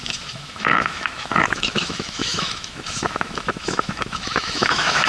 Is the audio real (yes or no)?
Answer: no